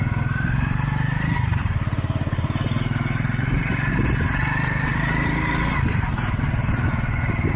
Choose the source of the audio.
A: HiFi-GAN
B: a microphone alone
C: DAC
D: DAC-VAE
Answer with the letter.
B